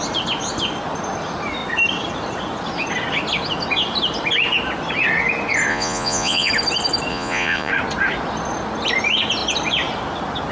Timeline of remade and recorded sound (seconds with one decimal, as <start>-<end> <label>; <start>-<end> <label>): 0.0-5.7 recorded; 5.7-6.5 remade; 6.5-7.1 recorded; 7.1-7.7 remade; 7.7-10.5 recorded